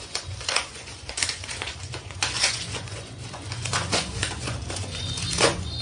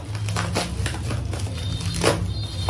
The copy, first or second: first